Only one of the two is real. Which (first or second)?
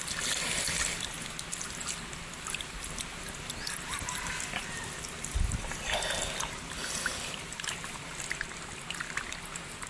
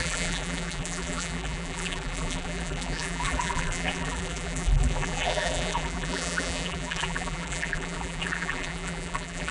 first